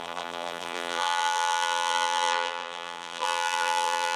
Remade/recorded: remade